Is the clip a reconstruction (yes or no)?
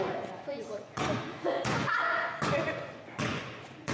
yes